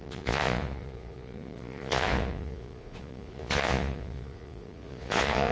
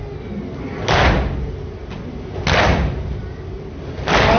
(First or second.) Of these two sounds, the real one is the second